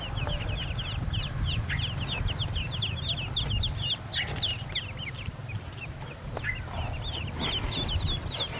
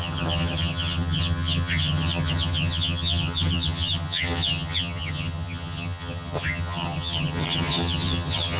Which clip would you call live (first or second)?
first